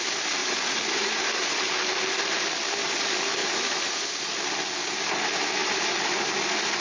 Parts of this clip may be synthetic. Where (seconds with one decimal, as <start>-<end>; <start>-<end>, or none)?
0.4-1.7; 3.4-4.4; 5.6-6.2